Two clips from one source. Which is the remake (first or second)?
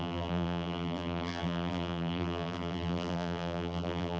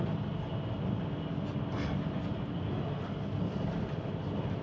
first